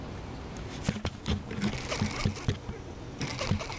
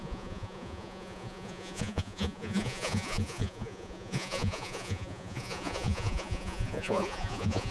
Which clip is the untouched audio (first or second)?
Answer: first